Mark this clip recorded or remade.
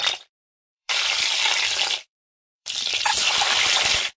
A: remade